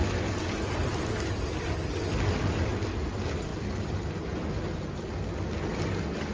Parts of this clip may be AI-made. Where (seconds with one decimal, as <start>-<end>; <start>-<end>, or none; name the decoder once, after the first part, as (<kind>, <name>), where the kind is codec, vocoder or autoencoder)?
none